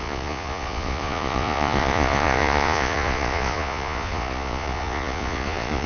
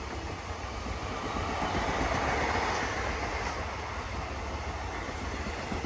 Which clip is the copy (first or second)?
first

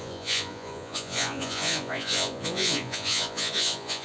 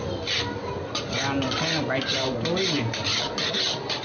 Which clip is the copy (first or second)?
first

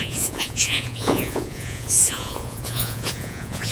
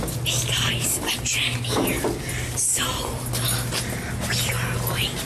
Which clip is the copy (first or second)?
first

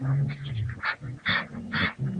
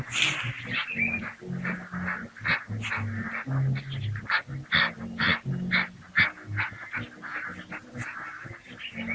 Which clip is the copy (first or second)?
first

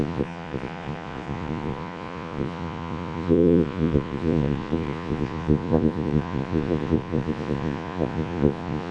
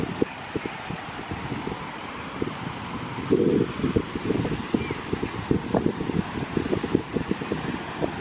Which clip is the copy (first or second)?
first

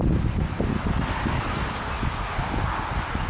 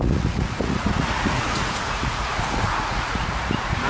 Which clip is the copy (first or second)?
second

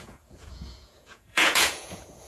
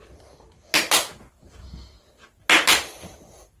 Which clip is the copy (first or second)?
first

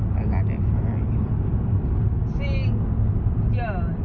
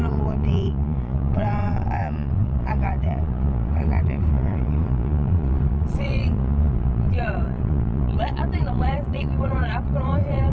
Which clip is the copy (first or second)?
second